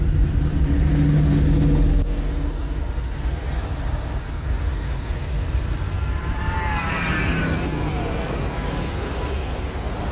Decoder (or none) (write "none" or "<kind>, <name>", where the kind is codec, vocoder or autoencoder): none